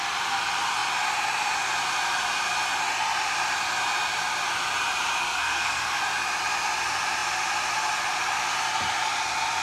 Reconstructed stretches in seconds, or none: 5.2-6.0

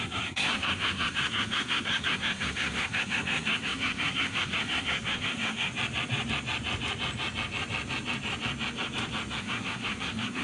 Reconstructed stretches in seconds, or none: 0.0-5.7; 9.4-10.4